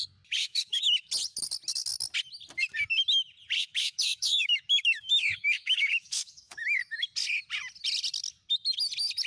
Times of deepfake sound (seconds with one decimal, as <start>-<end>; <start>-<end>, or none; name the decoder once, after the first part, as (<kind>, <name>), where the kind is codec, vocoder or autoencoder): 0.4-1.1 (autoencoder, DAC-VAE); 3.6-6.8